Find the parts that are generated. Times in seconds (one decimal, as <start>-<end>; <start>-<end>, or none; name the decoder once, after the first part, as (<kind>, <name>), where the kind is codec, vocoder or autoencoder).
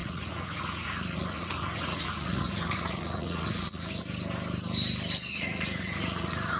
0.0-4.0 (vocoder, Vocos); 5.3-6.6